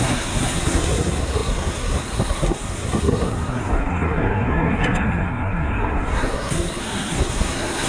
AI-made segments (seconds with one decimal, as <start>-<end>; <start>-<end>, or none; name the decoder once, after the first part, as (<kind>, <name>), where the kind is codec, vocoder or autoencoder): 0.0-7.9 (codec, SNAC)